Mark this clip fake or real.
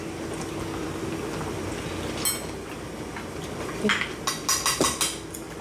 real